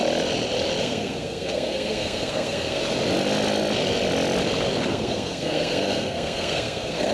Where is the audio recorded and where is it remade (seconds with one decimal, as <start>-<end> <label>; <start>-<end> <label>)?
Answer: 0.0-0.8 recorded; 0.8-2.8 remade; 2.8-4.9 recorded; 4.9-7.1 remade